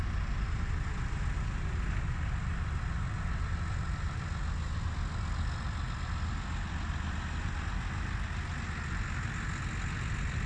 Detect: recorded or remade recorded